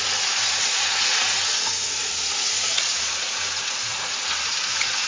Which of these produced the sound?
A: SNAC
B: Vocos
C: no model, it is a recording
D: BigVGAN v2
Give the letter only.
B